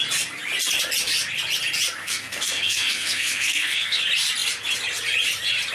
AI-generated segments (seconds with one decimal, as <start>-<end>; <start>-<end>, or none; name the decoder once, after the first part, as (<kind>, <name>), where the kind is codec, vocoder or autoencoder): 2.0-4.0 (codec, SNAC)